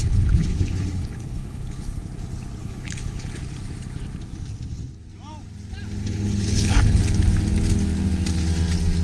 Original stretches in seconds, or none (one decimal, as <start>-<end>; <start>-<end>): 2.0-2.6; 3.4-6.0; 7.0-9.0